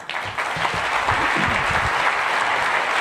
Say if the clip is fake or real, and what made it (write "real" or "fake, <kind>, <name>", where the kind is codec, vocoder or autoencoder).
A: real